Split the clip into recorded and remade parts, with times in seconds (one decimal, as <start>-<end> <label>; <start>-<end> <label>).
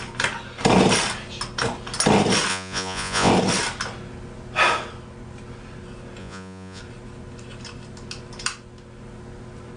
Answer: 0.0-2.5 recorded; 2.5-3.3 remade; 3.3-6.2 recorded; 6.2-6.8 remade; 6.8-9.8 recorded